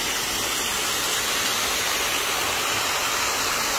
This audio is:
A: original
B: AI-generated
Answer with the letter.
A